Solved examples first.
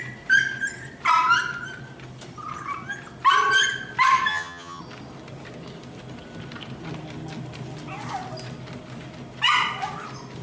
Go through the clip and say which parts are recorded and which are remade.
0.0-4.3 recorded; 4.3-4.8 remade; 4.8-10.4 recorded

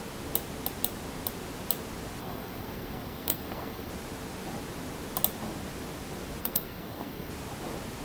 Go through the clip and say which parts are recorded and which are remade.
0.0-2.2 recorded; 2.2-3.9 remade; 3.9-6.4 recorded; 6.4-7.3 remade; 7.3-8.0 recorded

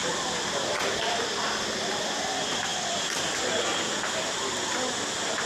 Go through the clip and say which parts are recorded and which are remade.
0.0-5.5 recorded

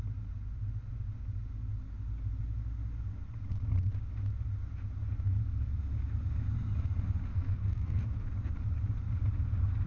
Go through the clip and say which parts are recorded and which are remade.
0.0-7.3 recorded; 7.3-8.0 remade; 8.0-9.9 recorded

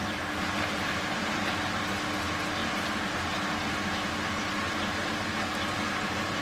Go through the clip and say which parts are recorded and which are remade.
0.0-1.0 remade; 1.0-6.4 recorded

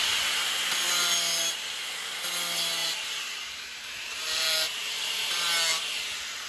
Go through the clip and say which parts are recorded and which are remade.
0.0-2.8 recorded; 2.8-5.3 remade; 5.3-6.5 recorded

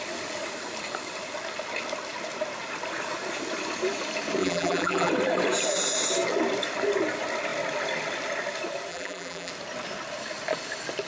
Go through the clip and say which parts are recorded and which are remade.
0.0-4.4 recorded; 4.4-5.1 remade; 5.1-8.9 recorded; 8.9-9.5 remade; 9.5-11.1 recorded